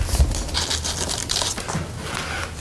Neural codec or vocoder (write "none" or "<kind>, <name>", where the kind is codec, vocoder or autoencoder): none